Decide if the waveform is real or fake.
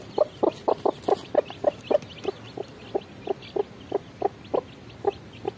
real